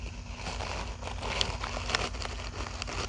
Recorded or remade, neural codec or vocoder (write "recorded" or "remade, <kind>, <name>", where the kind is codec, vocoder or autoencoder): recorded